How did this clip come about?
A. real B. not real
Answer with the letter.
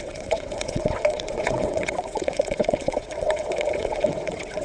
B